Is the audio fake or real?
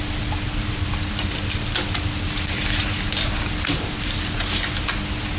real